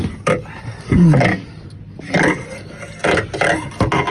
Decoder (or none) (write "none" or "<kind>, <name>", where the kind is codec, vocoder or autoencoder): none